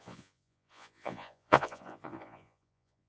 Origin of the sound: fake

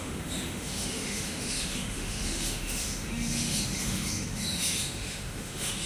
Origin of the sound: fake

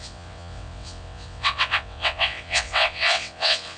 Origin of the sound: fake